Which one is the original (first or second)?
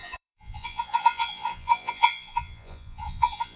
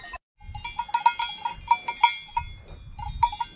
second